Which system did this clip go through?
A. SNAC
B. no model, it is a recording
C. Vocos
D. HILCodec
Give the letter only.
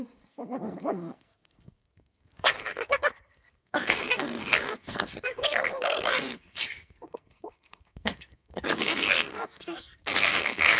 A